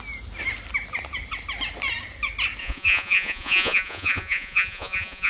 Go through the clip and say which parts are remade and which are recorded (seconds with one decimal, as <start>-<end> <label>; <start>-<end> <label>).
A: 0.0-2.6 recorded; 2.6-5.3 remade